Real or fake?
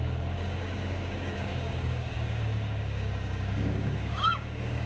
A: fake